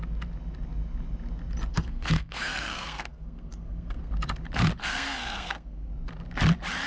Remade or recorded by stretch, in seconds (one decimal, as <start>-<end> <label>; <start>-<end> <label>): 0.0-1.7 recorded; 1.7-4.1 remade; 4.1-4.8 recorded; 4.8-5.9 remade; 5.9-6.9 recorded